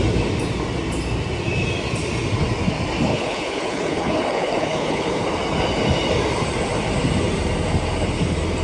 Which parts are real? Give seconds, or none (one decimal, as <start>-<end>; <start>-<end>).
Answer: 0.0-3.1; 5.2-8.6